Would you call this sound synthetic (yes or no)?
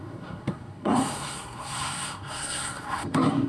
yes